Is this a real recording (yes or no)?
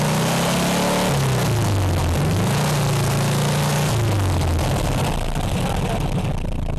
yes